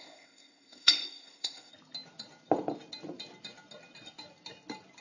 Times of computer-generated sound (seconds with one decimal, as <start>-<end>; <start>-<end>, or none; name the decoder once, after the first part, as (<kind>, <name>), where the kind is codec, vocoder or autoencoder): 0.0-1.7 (codec, ZipCodec)